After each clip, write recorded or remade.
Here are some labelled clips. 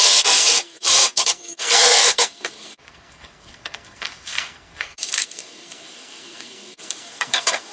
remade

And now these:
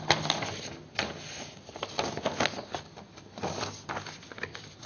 recorded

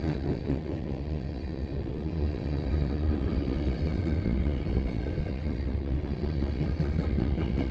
remade